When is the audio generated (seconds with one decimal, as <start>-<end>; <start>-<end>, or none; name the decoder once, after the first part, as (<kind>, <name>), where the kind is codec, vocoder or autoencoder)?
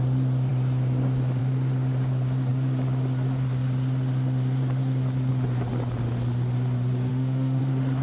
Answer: 7.1-7.6 (autoencoder, DAC-VAE)